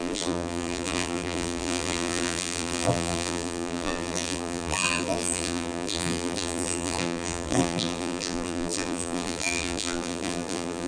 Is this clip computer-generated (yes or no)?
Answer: yes